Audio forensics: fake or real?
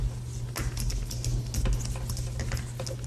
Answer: real